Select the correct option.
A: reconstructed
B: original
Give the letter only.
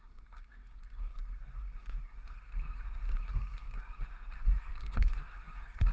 A